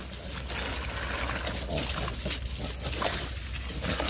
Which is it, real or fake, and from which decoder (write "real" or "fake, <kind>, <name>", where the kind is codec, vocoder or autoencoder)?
real